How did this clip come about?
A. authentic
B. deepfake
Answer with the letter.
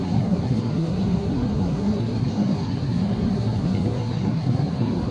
B